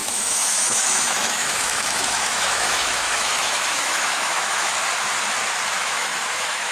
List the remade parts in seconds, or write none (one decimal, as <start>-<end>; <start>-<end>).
0.0-4.7; 5.7-6.7